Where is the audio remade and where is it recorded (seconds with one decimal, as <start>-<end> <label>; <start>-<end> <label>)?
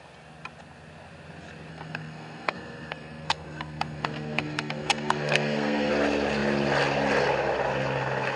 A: 0.0-1.7 recorded; 1.7-5.9 remade; 5.9-8.4 recorded